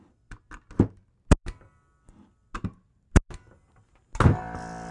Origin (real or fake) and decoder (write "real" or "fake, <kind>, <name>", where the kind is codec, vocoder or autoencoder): real